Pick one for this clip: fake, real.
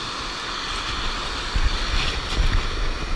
real